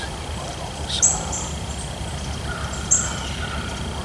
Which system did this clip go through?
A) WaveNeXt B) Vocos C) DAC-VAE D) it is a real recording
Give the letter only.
D